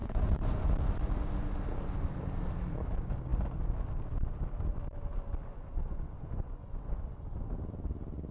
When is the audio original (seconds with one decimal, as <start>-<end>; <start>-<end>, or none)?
0.7-5.5; 6.7-8.3